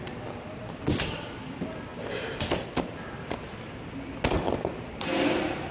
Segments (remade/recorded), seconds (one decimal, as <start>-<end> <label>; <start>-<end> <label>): 0.0-5.7 recorded